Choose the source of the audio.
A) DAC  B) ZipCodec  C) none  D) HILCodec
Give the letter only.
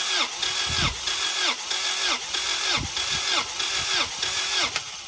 C